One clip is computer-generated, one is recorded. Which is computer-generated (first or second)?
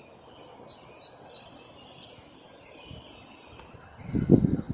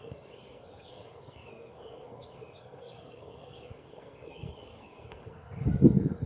second